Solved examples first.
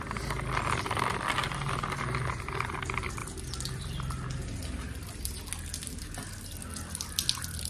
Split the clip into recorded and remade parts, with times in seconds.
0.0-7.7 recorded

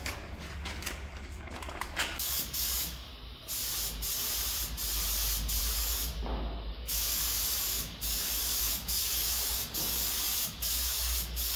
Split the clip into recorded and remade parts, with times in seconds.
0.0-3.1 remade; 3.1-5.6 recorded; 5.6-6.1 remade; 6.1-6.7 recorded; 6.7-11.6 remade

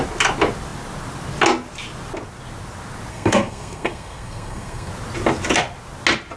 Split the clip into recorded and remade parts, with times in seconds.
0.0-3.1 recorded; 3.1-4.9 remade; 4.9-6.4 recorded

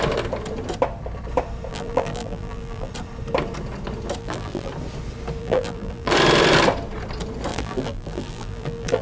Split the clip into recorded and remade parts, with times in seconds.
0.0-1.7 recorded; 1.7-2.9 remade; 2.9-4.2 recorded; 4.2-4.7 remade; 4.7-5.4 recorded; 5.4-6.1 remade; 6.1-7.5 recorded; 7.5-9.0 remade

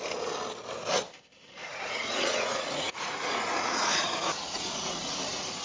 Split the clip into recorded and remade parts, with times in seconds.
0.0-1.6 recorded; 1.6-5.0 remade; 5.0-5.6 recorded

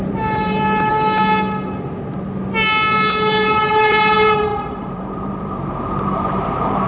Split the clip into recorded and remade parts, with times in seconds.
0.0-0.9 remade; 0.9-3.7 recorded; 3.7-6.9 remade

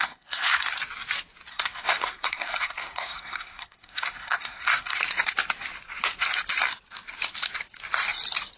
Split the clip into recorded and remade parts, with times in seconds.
0.0-0.7 remade; 0.7-1.5 recorded; 1.5-5.0 remade; 5.0-8.6 recorded